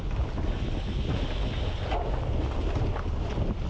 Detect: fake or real real